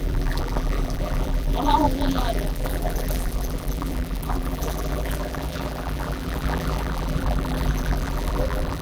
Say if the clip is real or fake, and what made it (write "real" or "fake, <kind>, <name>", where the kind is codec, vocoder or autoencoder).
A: fake, vocoder, BigVGAN v2